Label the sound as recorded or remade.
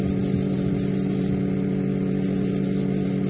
recorded